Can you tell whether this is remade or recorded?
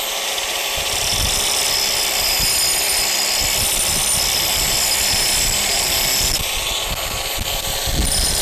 recorded